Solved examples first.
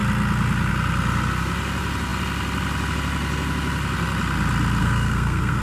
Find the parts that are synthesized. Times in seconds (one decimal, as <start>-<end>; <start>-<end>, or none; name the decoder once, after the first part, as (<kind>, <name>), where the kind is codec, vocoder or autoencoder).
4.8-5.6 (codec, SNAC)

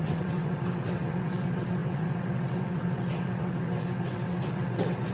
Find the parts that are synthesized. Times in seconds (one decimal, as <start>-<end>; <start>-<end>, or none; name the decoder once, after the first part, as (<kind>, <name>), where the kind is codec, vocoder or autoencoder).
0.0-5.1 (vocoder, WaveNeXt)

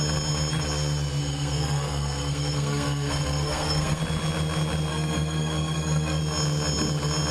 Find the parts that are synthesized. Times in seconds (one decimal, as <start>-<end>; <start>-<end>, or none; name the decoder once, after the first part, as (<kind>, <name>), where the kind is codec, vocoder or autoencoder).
1.2-4.0 (codec, SNAC); 4.9-6.2

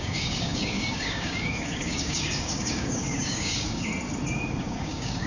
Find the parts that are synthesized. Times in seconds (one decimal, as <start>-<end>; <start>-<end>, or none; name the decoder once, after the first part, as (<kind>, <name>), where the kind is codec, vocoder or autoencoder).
0.0-3.9 (codec, DAC); 4.6-5.3

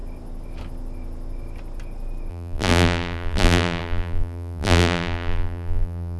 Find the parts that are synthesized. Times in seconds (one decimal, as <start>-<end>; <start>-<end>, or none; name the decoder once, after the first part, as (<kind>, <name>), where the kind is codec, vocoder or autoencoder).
2.3-6.2 (vocoder, BigVGAN v2)

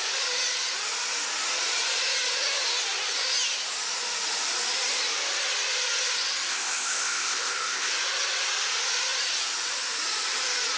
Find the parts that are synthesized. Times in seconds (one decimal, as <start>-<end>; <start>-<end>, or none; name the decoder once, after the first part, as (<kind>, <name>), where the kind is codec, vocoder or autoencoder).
6.5-7.9 (codec, ZipCodec)

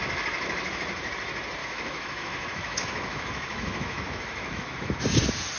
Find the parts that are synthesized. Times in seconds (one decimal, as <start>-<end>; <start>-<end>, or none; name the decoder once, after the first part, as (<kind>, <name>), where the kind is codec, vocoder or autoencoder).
1.6-5.0 (autoencoder, DAC-VAE)

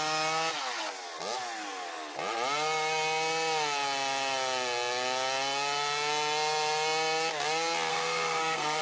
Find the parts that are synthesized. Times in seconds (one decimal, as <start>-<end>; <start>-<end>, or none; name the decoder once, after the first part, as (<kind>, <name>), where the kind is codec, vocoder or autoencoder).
7.9-8.8 (codec, SNAC)